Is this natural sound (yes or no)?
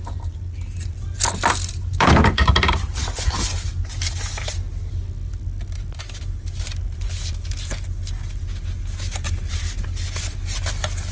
yes